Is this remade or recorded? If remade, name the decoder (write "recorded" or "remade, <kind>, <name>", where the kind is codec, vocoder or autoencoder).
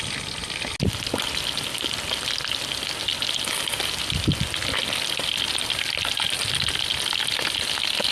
recorded